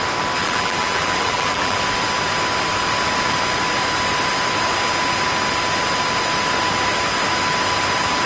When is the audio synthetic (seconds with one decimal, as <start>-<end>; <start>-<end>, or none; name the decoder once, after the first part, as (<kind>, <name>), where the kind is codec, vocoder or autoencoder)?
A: 0.4-1.8 (vocoder, BigVGAN v2)